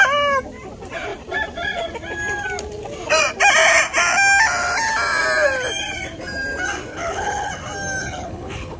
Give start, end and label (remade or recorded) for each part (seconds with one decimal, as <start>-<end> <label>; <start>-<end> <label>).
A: 0.0-6.9 recorded; 6.9-7.5 remade; 7.5-8.0 recorded; 8.0-8.8 remade